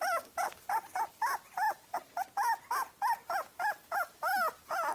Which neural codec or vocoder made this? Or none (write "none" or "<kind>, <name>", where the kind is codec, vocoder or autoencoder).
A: none